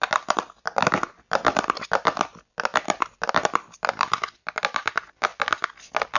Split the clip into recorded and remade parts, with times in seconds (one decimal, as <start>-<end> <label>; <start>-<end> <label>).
0.0-6.2 recorded